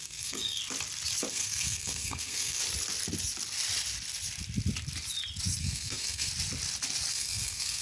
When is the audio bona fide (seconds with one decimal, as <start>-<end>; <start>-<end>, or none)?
0.6-1.3; 2.6-5.6; 6.3-7.1